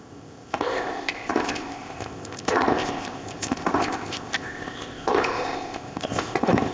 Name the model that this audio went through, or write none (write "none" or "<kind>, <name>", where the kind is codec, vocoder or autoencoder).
codec, ZipCodec